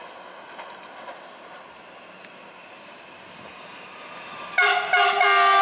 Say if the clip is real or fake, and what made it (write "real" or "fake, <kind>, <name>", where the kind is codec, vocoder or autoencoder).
real